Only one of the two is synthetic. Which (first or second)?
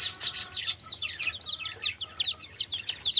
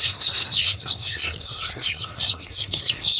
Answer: second